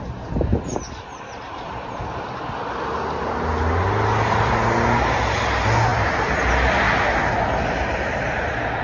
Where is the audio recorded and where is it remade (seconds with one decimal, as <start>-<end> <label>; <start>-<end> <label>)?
0.0-5.9 recorded; 5.9-6.5 remade; 6.5-8.8 recorded